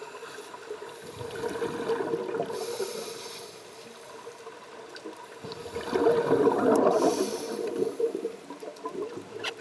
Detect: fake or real real